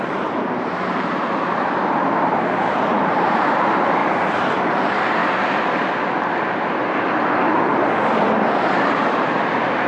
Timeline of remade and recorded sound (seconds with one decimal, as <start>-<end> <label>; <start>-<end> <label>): 0.0-1.8 remade; 1.8-2.7 recorded; 2.7-5.2 remade; 5.2-7.0 recorded; 7.0-9.9 remade